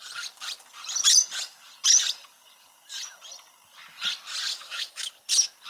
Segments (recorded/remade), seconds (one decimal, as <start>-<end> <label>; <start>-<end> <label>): 0.0-4.5 recorded; 4.5-5.1 remade; 5.1-5.7 recorded